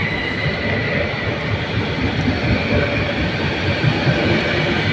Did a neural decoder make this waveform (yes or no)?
no